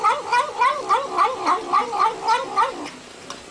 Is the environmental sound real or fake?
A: real